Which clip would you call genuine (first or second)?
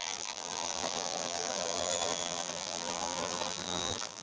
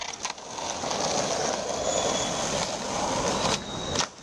second